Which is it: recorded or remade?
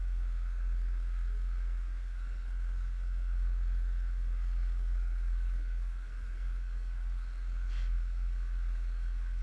remade